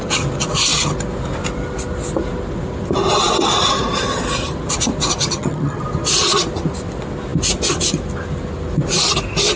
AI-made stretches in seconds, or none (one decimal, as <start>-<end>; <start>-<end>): 5.2-5.8